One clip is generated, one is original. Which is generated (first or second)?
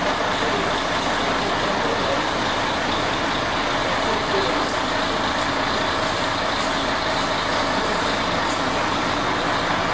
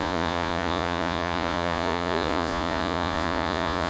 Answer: second